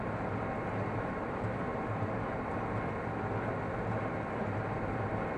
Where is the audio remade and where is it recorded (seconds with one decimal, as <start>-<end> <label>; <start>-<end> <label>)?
0.0-1.7 remade; 1.7-4.9 recorded; 4.9-5.4 remade